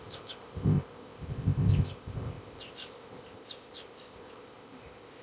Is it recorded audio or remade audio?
remade